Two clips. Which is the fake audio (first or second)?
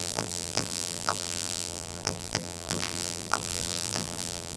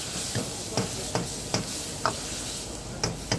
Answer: first